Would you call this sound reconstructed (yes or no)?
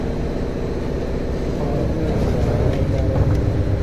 no